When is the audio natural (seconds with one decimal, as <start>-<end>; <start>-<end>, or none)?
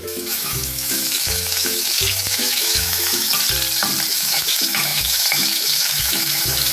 3.3-4.1